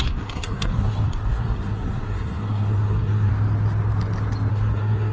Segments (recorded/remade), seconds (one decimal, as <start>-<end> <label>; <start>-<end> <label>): 0.0-3.3 remade; 3.3-4.5 recorded; 4.5-5.1 remade